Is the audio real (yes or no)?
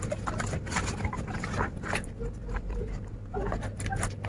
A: yes